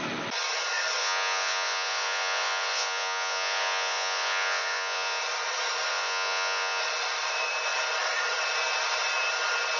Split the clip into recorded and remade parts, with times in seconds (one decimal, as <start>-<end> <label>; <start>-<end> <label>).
0.0-1.0 recorded; 1.0-5.2 remade; 5.2-5.9 recorded; 5.9-6.8 remade; 6.8-9.8 recorded